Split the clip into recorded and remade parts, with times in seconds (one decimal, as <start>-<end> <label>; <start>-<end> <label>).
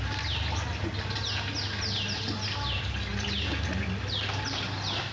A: 0.0-5.1 recorded